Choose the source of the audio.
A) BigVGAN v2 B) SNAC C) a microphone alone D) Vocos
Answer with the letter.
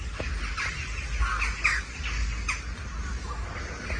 C